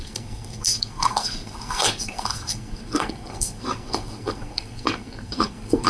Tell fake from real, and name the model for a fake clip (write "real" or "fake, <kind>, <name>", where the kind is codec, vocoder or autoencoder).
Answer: fake, codec, SNAC